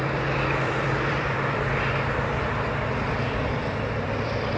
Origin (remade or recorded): remade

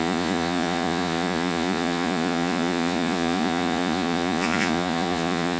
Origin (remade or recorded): remade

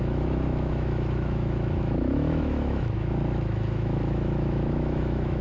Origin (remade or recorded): remade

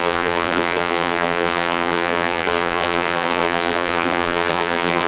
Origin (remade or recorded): remade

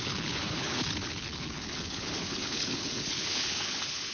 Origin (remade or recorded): remade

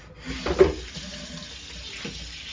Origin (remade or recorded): recorded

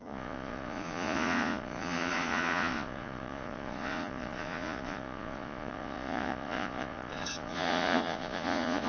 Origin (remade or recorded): remade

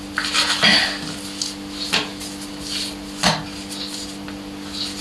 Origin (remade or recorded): recorded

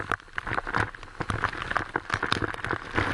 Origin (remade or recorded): recorded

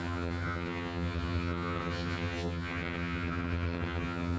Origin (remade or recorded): remade